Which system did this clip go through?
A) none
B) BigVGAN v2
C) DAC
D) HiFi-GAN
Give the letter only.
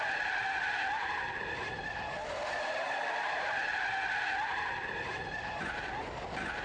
A